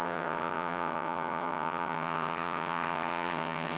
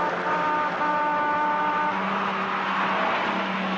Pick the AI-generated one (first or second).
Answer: first